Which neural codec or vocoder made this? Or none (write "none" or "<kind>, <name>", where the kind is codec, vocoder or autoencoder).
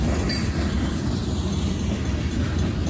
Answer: none